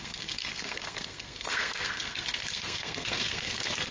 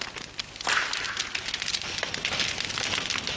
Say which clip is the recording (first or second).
second